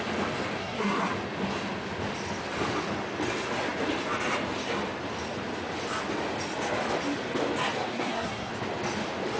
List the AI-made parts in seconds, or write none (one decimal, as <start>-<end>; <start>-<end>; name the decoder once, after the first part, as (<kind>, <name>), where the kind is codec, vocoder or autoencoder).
0.6-1.1 (codec, SNAC); 7.9-8.5

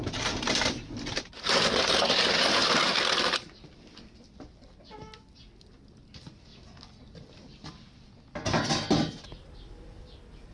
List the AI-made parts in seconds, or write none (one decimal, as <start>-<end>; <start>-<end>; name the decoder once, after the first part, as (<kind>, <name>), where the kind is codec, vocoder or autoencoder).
0.0-1.7 (vocoder, BigVGAN v2); 2.6-4.8; 6.5-8.7

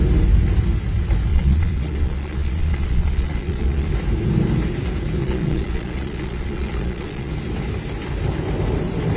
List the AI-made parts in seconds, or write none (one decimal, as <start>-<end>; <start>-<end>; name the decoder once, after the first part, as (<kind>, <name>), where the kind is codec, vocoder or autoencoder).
1.3-3.9 (vocoder, Vocos); 5.2-7.3

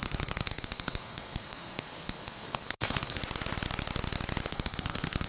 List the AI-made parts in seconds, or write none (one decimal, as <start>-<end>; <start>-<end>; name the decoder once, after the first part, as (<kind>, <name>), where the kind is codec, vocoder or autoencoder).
0.0-3.2 (codec, SNAC); 4.5-5.3

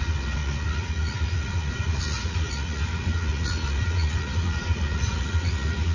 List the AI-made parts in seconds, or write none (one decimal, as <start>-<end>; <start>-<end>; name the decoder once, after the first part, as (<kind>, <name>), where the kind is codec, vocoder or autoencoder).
0.0-5.9 (vocoder, Vocos)

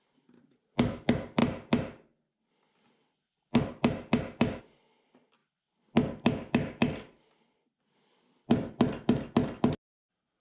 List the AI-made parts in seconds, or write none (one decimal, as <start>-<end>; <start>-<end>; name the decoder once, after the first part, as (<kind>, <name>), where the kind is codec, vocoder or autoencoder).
none